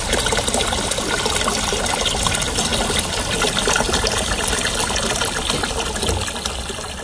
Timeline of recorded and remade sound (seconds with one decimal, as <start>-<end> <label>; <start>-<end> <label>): 0.0-7.0 recorded